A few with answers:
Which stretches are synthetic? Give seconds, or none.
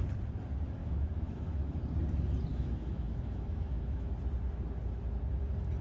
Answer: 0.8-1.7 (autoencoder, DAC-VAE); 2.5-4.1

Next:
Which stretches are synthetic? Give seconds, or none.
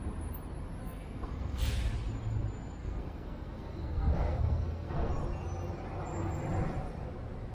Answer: 0.8-1.7 (codec, SNAC); 2.8-5.1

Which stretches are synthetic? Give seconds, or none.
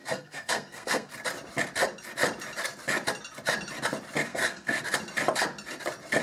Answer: 0.0-1.1 (codec, SNAC); 4.3-4.8